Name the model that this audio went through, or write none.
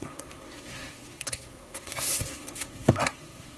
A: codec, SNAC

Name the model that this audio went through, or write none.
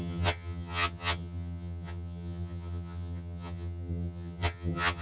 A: vocoder, HiFi-GAN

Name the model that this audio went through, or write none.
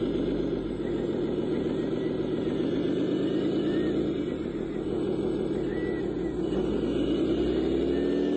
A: none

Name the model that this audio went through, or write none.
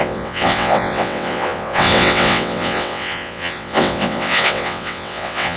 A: vocoder, WaveNeXt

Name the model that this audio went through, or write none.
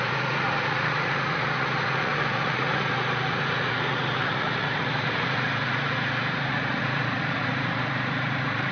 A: vocoder, Vocos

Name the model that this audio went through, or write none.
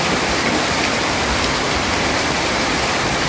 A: none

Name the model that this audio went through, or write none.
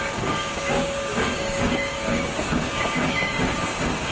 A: codec, DAC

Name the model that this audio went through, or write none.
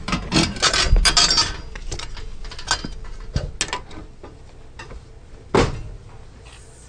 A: none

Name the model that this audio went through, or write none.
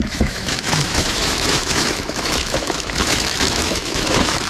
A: autoencoder, DAC-VAE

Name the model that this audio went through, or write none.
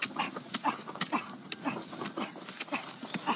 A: none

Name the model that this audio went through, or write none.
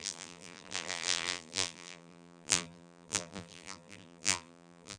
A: vocoder, BigVGAN v2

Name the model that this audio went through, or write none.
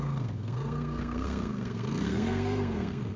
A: codec, SNAC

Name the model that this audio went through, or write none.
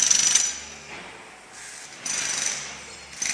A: none